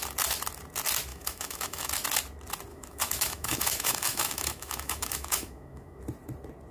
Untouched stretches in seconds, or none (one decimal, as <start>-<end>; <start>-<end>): 0.0-1.1; 1.9-2.7; 6.0-6.7

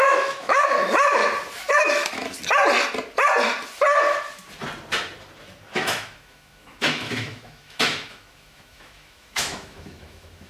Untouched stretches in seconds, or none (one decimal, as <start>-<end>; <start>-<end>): 1.2-1.7; 2.2-5.8

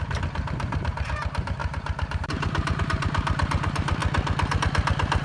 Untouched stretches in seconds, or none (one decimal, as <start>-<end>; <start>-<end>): 4.0-4.6

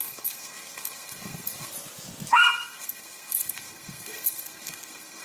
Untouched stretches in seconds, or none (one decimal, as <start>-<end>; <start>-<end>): 1.7-2.3

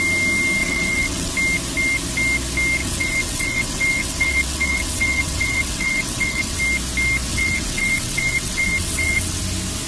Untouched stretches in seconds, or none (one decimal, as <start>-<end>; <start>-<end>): 0.0-0.6; 1.3-2.8; 6.6-7.3; 9.4-9.9

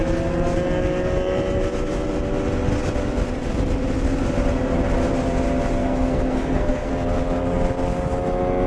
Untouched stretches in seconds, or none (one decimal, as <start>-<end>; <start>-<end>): 0.0-5.8; 6.9-8.7